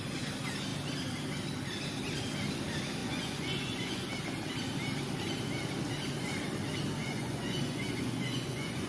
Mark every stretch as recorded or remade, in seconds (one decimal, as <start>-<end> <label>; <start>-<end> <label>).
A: 0.0-3.0 recorded; 3.0-4.1 remade; 4.1-7.0 recorded; 7.0-8.9 remade